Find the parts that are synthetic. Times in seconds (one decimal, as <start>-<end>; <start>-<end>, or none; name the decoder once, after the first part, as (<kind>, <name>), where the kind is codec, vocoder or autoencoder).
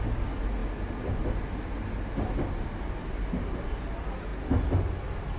none